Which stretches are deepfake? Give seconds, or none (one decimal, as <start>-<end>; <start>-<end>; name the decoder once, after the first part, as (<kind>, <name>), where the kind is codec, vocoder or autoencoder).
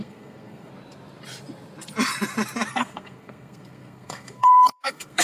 0.0-0.7 (codec, SNAC); 2.7-5.2